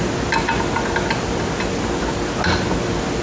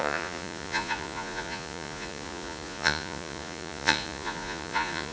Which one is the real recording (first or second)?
first